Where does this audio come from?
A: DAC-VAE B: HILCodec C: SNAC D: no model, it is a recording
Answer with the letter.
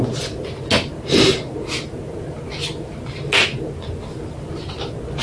D